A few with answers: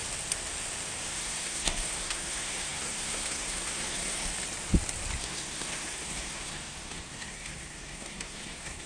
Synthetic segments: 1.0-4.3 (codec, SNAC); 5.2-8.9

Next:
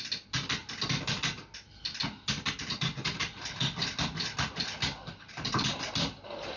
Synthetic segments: none

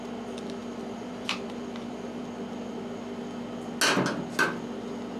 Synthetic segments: 0.6-2.2 (vocoder, BigVGAN v2)